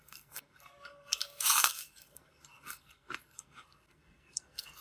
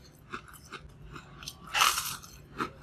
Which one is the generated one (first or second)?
first